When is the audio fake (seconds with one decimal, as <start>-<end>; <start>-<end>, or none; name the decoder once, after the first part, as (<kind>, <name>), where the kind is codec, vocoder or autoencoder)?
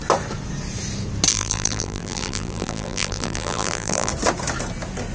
1.3-4.1 (vocoder, BigVGAN v2)